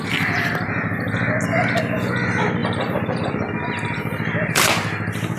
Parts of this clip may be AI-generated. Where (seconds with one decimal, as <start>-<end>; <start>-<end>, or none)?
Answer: 2.6-4.7